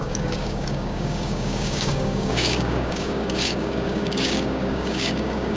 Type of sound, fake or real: fake